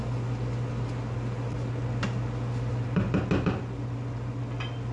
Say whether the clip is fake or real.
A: real